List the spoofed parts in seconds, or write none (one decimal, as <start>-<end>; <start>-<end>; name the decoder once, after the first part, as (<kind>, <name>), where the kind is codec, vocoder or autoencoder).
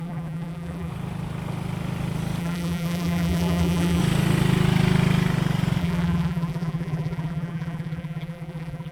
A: 0.0-0.9 (vocoder, BigVGAN v2); 2.4-4.0; 5.8-8.9